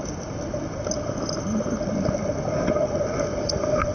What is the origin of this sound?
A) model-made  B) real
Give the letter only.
B